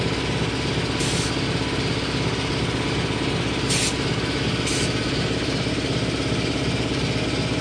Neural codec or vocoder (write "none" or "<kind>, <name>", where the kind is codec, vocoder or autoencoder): none